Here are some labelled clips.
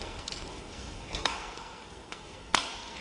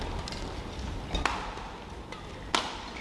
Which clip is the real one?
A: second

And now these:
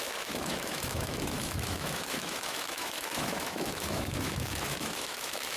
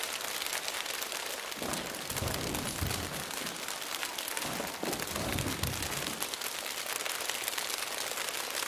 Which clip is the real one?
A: second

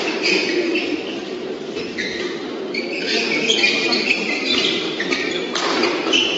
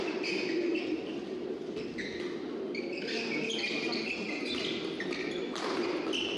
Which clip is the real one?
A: second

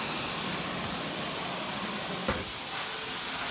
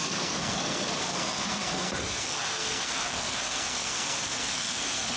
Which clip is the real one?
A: first